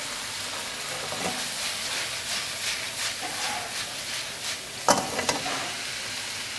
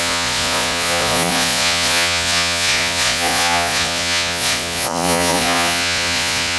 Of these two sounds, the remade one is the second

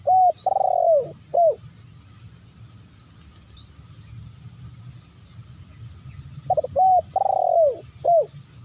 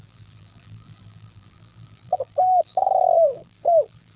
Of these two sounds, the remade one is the second